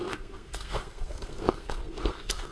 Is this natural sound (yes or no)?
no